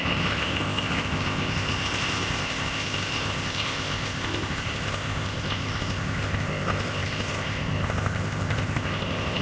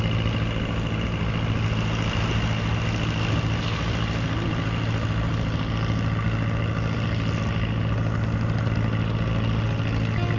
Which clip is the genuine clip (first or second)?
second